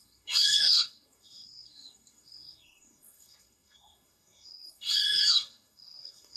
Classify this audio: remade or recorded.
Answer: remade